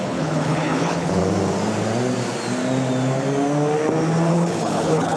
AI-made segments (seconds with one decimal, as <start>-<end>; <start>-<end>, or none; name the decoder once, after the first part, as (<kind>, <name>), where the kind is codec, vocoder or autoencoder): 0.0-1.2 (codec, HILCodec); 4.3-5.2

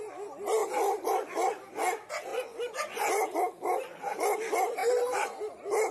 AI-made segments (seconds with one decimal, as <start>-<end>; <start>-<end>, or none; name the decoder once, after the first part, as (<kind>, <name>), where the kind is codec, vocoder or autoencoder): 2.3-3.4 (vocoder, Vocos)

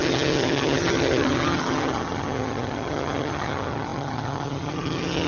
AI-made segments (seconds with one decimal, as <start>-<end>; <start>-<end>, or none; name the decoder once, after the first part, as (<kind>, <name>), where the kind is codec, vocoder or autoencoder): 0.0-5.3 (vocoder, HiFi-GAN)

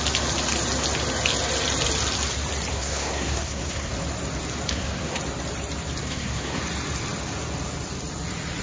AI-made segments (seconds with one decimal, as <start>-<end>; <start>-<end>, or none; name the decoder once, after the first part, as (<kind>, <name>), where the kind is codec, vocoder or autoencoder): 2.7-3.9 (codec, SNAC); 4.7-5.2; 6.0-6.6

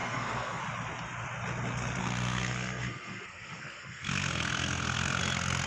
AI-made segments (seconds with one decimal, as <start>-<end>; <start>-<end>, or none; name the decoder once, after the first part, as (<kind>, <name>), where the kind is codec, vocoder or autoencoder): 0.0-0.6 (codec, SNAC); 2.0-5.2

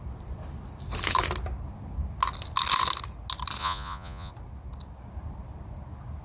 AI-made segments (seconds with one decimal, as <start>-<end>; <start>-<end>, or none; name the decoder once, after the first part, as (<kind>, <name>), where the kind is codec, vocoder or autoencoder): 3.6-4.3 (vocoder, Vocos)

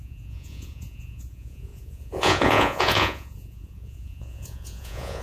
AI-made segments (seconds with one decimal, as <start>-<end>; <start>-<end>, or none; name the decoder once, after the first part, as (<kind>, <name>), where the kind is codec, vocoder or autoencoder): 0.0-5.2 (vocoder, Vocos)